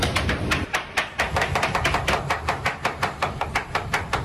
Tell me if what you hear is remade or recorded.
remade